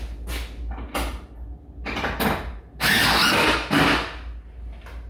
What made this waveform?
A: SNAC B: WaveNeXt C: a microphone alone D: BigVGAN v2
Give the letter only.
C